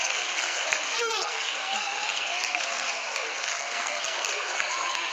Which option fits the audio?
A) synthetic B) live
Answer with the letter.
A